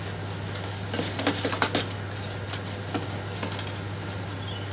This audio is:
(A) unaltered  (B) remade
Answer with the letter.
A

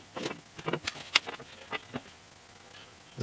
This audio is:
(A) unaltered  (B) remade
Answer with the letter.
A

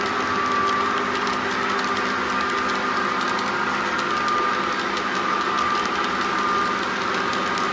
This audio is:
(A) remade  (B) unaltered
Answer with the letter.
B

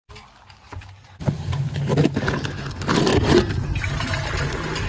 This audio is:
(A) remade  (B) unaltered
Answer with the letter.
B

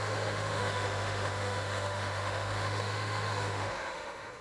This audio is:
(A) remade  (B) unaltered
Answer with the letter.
A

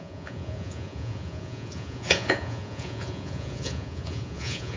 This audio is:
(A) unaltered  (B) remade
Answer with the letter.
B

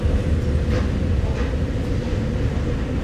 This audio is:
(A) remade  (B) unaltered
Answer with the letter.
B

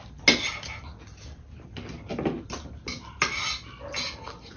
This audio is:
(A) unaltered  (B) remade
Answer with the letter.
A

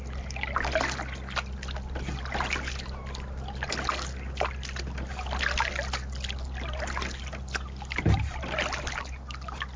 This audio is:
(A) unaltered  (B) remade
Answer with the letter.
A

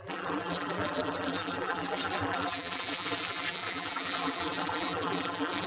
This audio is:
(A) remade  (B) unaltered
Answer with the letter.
A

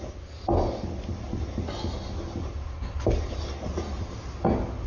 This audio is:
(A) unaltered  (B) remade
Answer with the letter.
A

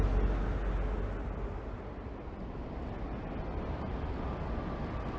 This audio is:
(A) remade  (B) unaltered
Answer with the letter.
B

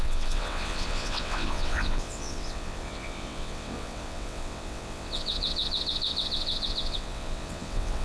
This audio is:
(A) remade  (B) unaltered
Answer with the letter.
A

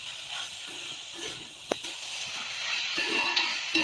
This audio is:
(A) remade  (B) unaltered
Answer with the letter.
A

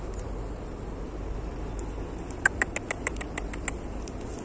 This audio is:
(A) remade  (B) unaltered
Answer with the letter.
B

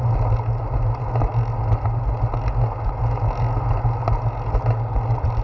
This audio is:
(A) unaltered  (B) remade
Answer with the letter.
A